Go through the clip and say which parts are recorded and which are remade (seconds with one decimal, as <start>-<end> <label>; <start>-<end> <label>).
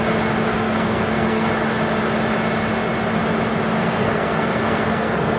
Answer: 0.0-0.5 recorded; 0.5-1.5 remade; 1.5-3.8 recorded; 3.8-5.4 remade